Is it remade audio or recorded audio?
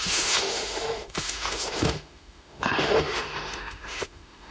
remade